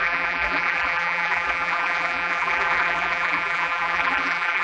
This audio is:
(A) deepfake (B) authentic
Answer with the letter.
A